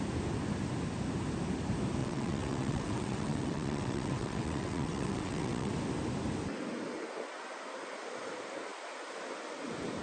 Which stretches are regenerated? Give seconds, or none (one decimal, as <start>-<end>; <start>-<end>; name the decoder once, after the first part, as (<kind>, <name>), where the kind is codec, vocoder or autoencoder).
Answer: 2.0-5.7 (vocoder, WaveNeXt)